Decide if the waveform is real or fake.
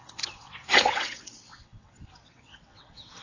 fake